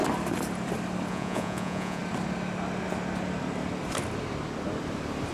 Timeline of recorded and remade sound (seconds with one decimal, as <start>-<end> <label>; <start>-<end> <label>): 0.0-1.1 recorded; 1.1-2.0 remade; 2.0-5.3 recorded